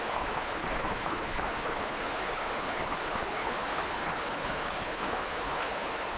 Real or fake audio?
fake